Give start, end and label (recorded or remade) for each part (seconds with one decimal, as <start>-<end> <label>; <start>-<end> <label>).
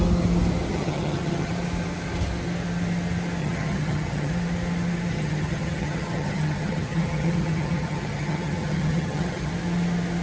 0.0-0.7 recorded; 0.7-1.5 remade; 1.5-3.4 recorded; 3.4-4.3 remade; 4.3-5.1 recorded; 5.1-9.5 remade; 9.5-10.2 recorded